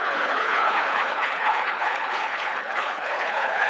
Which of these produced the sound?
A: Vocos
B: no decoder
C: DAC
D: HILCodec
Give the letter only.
D